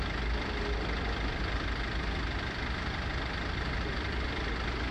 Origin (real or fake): real